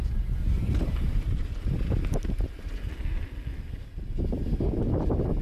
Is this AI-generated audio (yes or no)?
no